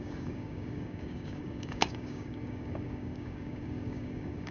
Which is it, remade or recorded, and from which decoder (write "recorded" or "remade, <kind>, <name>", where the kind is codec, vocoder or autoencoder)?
remade, codec, DAC